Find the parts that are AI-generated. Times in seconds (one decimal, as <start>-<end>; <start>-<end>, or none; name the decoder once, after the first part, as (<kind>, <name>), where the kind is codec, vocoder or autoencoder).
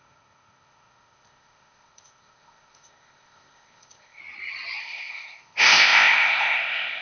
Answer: 0.0-4.2 (codec, ZipCodec); 4.8-7.0